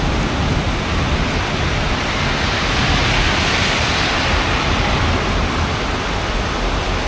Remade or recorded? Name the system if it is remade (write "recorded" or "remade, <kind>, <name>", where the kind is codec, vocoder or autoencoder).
recorded